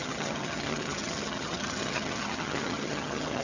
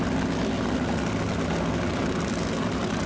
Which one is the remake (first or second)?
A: first